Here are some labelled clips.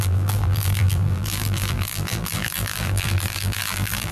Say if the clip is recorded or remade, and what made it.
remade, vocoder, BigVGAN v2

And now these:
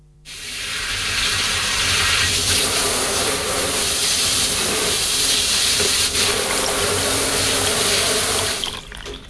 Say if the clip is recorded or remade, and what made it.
remade, vocoder, BigVGAN v2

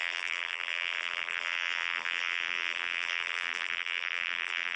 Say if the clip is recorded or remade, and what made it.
remade, vocoder, BigVGAN v2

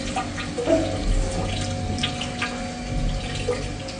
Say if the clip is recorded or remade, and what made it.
recorded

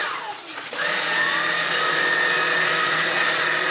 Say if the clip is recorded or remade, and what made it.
remade, vocoder, BigVGAN v2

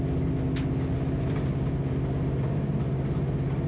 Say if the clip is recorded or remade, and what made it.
recorded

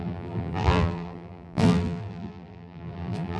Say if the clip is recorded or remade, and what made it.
remade, vocoder, BigVGAN v2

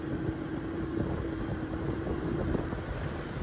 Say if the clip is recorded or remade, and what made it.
remade, vocoder, BigVGAN v2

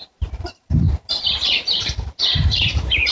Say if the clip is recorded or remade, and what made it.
remade, vocoder, BigVGAN v2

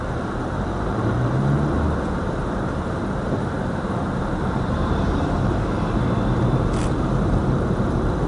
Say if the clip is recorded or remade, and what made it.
remade, vocoder, BigVGAN v2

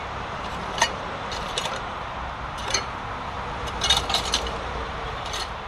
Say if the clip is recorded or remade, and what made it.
remade, vocoder, BigVGAN v2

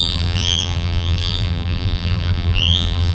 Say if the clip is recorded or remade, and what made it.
remade, vocoder, BigVGAN v2